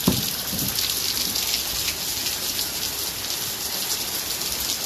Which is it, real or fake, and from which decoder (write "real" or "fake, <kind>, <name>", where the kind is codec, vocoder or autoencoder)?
real